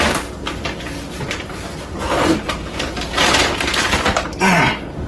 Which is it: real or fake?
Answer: fake